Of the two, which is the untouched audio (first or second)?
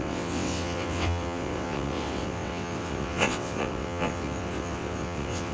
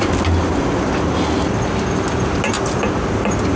second